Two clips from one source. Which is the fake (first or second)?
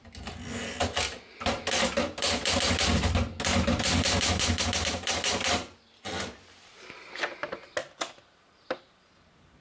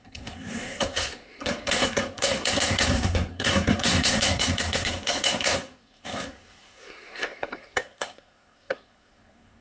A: second